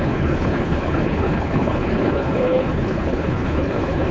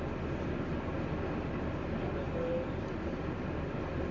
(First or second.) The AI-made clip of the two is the first